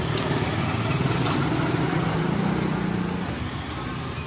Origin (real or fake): real